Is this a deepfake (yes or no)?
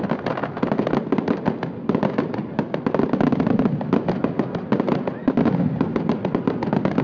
no